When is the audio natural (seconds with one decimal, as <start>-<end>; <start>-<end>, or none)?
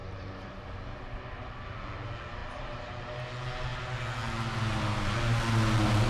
0.5-2.4; 3.3-6.1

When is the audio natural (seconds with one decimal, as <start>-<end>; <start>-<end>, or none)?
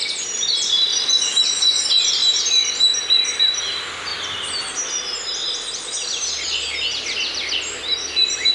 4.1-8.5